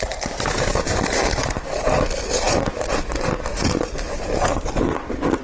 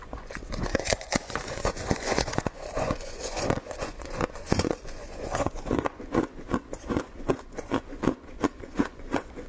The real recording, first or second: first